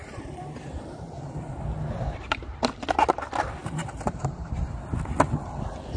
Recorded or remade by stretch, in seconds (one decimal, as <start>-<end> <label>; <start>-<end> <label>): 0.0-0.8 remade; 0.8-3.6 recorded; 3.6-4.6 remade; 4.6-6.0 recorded

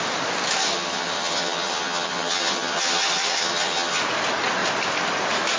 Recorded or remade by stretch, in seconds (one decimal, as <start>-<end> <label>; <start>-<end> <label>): 0.0-0.6 recorded; 0.6-4.0 remade; 4.0-5.6 recorded